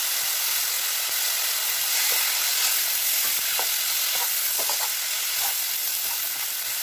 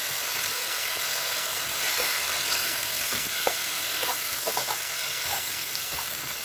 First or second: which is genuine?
first